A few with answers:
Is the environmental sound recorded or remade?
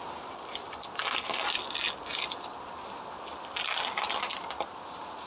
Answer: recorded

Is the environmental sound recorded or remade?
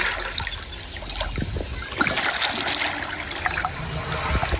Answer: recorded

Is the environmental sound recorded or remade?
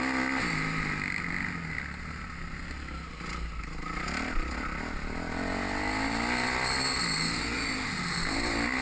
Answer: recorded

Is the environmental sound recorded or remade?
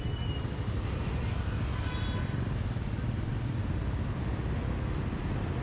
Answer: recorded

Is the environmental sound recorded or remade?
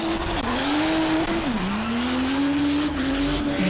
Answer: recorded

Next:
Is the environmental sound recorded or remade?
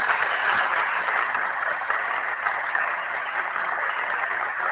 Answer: remade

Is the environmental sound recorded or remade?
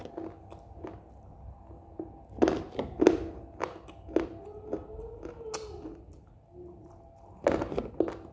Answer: recorded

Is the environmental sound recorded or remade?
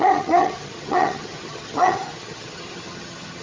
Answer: remade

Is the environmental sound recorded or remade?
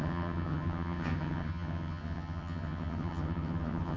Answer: remade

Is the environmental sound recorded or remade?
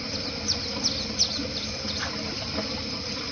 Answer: recorded